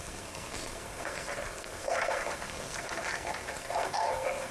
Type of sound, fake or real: fake